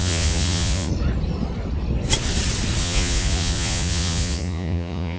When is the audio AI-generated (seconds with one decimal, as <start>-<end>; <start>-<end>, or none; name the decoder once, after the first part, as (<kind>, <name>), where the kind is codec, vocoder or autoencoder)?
0.0-0.9 (vocoder, Vocos); 2.8-5.2

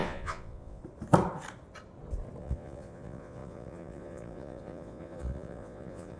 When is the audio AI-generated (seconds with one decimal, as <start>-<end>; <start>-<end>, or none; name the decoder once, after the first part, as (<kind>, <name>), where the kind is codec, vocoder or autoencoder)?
0.0-0.8 (vocoder, Vocos); 2.4-6.2

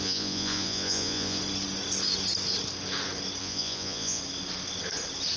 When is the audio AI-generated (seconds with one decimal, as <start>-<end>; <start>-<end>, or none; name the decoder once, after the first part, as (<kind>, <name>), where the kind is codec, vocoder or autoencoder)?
0.0-1.4 (vocoder, Vocos); 3.4-4.2

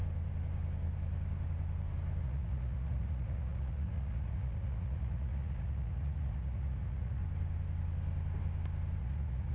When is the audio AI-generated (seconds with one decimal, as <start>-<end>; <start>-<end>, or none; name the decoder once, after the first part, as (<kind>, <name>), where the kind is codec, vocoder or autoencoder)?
2.2-7.2 (vocoder, Vocos); 9.0-9.5

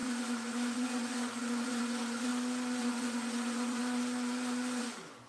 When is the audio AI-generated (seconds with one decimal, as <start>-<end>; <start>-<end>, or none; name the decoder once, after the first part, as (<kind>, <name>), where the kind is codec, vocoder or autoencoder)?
0.0-2.3 (vocoder, Vocos); 2.8-3.8; 4.8-5.3

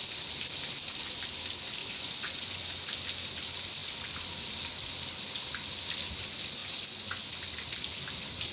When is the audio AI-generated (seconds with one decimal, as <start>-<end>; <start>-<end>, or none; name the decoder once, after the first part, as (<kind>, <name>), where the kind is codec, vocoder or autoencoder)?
1.8-2.6 (vocoder, Vocos); 6.6-7.3

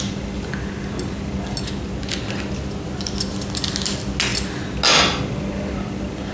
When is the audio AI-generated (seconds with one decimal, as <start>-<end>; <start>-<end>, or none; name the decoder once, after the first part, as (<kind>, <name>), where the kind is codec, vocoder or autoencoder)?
none